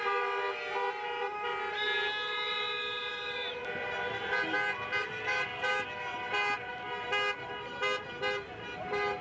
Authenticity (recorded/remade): recorded